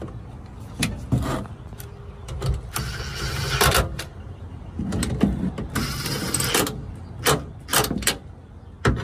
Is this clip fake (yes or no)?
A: no